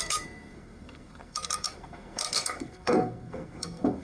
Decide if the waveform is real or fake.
fake